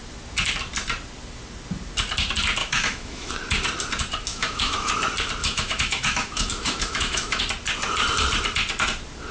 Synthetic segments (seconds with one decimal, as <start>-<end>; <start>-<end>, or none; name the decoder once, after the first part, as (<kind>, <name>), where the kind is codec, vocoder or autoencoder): 2.6-3.3 (autoencoder, DAC-VAE); 4.3-4.9; 5.4-7.4